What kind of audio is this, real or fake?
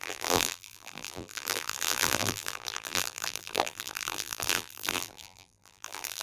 fake